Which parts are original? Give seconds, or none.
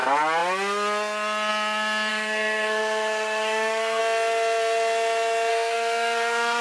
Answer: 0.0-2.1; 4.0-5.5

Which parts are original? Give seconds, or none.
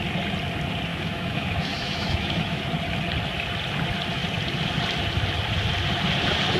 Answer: 0.0-0.9; 2.6-6.6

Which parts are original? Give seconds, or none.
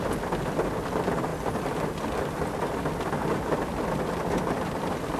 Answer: 0.0-5.2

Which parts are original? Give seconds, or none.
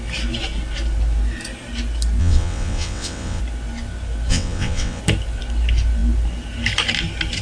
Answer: 0.0-2.2; 3.4-4.3; 5.0-7.4